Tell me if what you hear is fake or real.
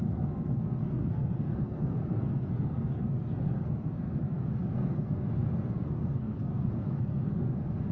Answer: fake